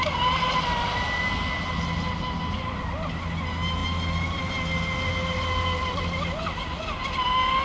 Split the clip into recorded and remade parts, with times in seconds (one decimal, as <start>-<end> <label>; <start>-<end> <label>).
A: 0.0-7.6 recorded